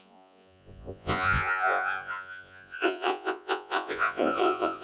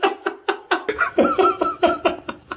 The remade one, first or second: first